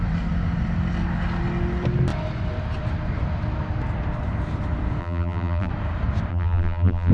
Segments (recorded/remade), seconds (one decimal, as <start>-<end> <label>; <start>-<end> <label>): 0.0-5.0 recorded; 5.0-5.7 remade; 5.7-6.3 recorded; 6.3-7.1 remade